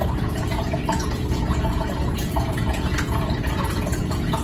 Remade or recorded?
remade